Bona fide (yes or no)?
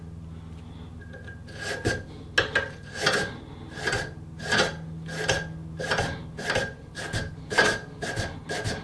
yes